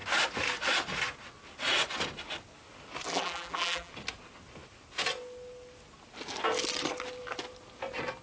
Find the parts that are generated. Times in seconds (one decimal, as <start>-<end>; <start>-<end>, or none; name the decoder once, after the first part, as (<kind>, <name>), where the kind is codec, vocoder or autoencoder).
3.1-3.9 (vocoder, BigVGAN v2)

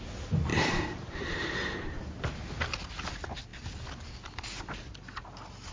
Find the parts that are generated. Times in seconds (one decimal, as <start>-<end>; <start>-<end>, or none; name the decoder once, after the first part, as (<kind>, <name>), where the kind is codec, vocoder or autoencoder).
0.5-2.0 (vocoder, BigVGAN v2)

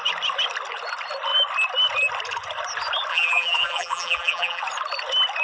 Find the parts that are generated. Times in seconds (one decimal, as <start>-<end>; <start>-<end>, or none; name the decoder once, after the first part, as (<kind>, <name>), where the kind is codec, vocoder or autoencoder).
3.1-4.6 (vocoder, BigVGAN v2)

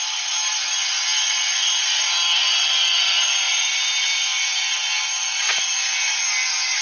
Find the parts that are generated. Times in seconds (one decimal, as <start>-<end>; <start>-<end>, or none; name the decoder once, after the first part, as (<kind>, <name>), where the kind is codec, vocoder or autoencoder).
none

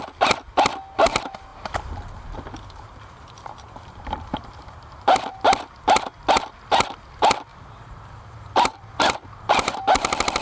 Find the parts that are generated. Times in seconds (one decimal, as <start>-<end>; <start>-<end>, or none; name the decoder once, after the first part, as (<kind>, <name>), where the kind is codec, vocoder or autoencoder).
1.5-5.4 (vocoder, BigVGAN v2); 7.5-9.8

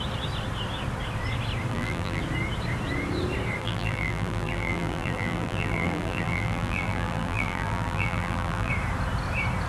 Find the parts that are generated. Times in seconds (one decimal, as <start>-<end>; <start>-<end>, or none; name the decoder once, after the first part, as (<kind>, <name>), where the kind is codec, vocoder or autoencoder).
1.7-2.2 (vocoder, BigVGAN v2); 3.6-8.7

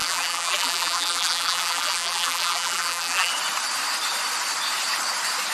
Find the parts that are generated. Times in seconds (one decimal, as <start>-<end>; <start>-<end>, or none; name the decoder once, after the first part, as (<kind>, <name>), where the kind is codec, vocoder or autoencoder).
0.0-3.3 (vocoder, BigVGAN v2)